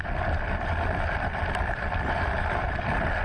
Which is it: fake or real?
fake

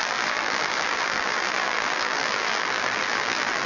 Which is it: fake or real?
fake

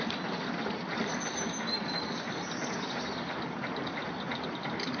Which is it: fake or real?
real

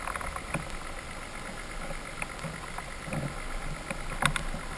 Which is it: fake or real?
real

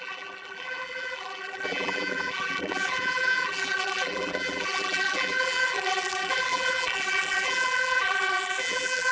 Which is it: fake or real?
fake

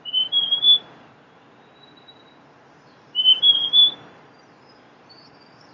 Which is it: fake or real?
fake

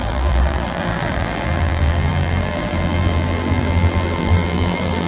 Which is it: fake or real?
fake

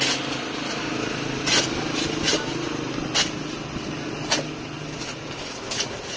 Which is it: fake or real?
real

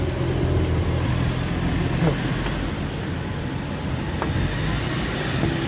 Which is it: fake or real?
real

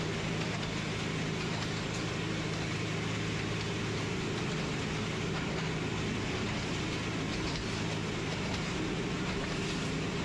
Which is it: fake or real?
real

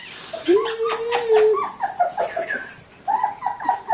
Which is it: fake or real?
fake